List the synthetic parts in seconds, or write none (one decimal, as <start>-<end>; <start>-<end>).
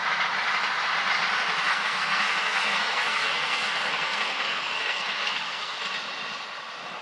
1.7-5.8